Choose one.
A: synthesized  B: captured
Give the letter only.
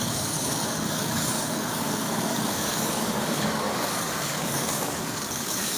A